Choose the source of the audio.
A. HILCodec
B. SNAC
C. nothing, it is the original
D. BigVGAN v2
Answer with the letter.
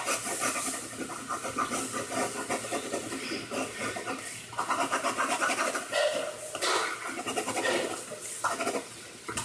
C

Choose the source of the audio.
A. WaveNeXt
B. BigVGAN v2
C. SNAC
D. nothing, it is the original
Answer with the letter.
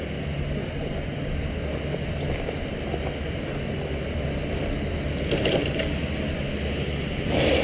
D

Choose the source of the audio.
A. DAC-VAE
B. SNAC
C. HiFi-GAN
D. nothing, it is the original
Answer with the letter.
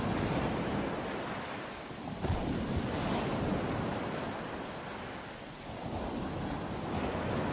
D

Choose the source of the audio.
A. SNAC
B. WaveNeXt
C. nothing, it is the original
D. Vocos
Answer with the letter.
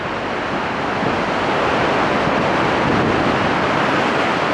C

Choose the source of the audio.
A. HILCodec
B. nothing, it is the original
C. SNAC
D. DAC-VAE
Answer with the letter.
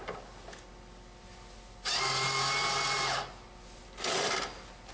B